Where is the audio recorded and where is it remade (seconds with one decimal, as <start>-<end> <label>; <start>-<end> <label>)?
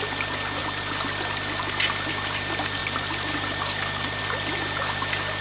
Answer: 0.0-2.8 recorded; 2.8-4.2 remade; 4.2-5.4 recorded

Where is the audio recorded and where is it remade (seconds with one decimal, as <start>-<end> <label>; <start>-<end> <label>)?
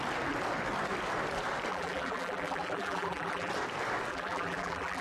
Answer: 0.0-1.7 recorded; 1.7-3.5 remade; 3.5-4.1 recorded; 4.1-5.0 remade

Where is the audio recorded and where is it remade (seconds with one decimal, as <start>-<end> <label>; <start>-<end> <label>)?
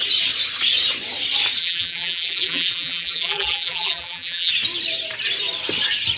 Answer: 0.0-1.6 recorded; 1.6-4.5 remade; 4.5-6.2 recorded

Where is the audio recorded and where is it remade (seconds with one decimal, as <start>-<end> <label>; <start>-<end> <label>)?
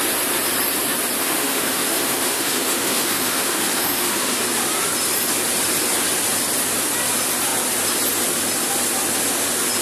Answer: 0.0-1.2 recorded; 1.2-4.4 remade; 4.4-9.8 recorded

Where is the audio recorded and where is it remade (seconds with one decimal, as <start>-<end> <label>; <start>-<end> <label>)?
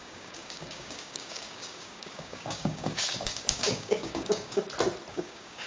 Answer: 0.0-4.6 remade; 4.6-5.1 recorded; 5.1-5.7 remade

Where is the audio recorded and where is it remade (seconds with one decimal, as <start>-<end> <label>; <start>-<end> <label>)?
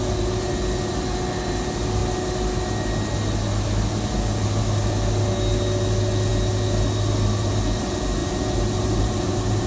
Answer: 0.0-8.2 recorded; 8.2-9.7 remade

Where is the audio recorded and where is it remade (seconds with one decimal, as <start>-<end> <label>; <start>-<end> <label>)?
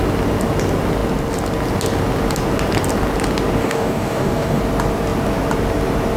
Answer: 0.0-3.6 recorded; 3.6-4.6 remade; 4.6-6.2 recorded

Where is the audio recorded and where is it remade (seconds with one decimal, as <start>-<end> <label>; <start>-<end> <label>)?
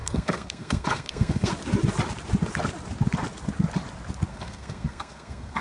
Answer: 0.0-1.5 remade; 1.5-4.3 recorded; 4.3-5.6 remade